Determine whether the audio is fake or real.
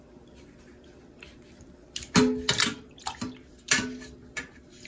real